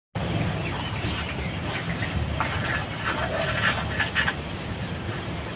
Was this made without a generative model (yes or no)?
yes